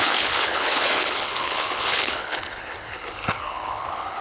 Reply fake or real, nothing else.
fake